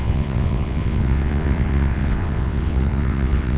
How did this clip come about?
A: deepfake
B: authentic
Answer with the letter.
A